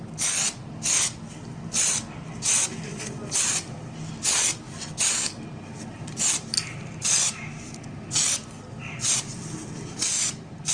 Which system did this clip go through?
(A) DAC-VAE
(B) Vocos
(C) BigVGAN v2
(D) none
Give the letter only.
D